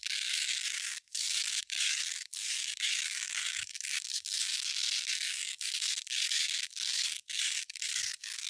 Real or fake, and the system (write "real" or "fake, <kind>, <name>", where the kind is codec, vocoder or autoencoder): fake, codec, DAC